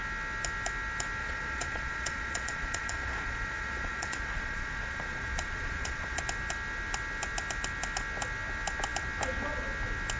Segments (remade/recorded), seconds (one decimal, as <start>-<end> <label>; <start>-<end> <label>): 0.0-1.2 recorded; 1.2-6.2 remade; 6.2-10.2 recorded